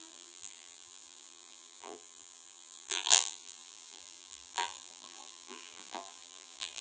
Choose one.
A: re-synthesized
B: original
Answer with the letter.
A